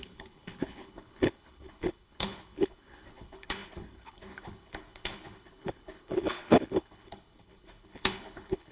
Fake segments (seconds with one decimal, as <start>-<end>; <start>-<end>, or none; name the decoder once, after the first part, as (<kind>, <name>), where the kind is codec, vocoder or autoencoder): 0.0-8.7 (codec, HILCodec)

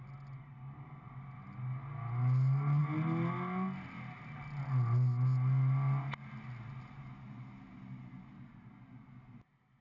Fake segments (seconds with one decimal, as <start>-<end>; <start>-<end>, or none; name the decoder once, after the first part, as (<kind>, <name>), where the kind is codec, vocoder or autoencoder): none

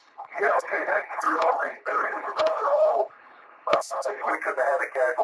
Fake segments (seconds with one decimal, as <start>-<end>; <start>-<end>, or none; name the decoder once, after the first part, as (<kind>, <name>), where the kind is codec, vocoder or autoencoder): 0.0-4.3 (codec, HILCodec)